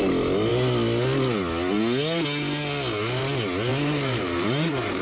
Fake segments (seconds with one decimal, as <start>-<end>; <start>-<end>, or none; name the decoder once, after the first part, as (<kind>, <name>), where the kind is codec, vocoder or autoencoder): 3.7-5.0 (vocoder, BigVGAN v2)